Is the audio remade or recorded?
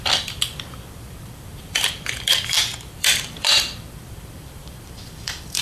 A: remade